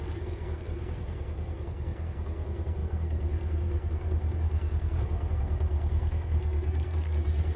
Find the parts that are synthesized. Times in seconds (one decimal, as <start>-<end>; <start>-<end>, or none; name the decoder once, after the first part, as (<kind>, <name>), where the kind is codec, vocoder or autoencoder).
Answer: 0.0-7.6 (codec, SNAC)

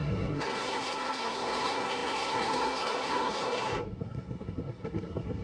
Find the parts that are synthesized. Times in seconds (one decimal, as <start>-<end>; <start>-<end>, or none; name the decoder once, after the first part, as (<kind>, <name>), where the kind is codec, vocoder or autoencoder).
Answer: 0.0-5.4 (codec, SNAC)